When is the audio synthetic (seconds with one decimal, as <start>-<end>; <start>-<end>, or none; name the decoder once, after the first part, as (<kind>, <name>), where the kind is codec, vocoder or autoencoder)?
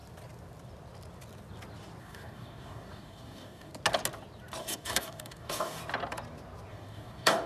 2.0-3.7 (codec, DAC); 4.6-5.8; 6.7-7.5